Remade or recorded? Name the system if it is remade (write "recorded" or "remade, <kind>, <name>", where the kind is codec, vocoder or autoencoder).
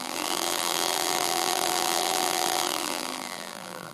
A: remade, vocoder, BigVGAN v2